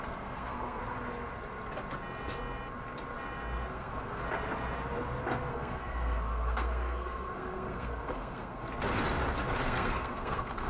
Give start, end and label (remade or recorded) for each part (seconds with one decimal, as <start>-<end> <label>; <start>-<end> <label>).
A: 0.0-0.8 remade; 0.8-3.7 recorded; 3.7-4.2 remade; 4.2-5.5 recorded; 5.5-8.6 remade; 8.6-9.6 recorded; 9.6-10.7 remade